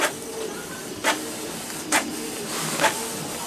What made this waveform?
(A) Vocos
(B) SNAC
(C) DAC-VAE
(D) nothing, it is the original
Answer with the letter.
D